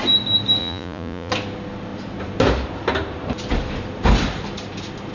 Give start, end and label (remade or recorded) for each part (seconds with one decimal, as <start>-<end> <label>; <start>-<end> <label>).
0.0-0.6 recorded; 0.6-1.3 remade; 1.3-5.1 recorded